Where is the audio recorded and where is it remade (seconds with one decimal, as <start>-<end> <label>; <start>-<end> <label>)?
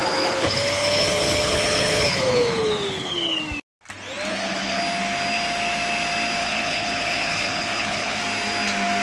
0.0-3.4 remade; 3.4-4.3 recorded; 4.3-4.8 remade; 4.8-6.4 recorded; 6.4-8.2 remade; 8.2-9.0 recorded